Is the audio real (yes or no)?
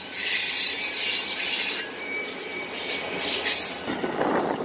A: no